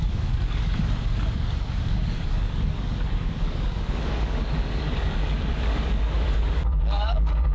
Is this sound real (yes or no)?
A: no